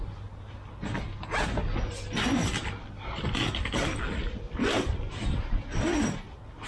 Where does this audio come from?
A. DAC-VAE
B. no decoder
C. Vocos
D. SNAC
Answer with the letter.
B